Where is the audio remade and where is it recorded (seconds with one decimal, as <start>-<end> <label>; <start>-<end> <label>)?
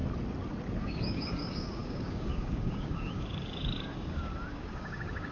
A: 0.0-0.8 recorded; 0.8-5.3 remade